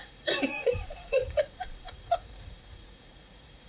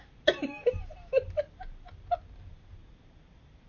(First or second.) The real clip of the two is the second